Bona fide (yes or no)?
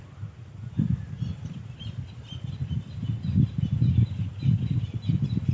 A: yes